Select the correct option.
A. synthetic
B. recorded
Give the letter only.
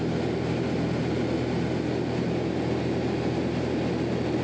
B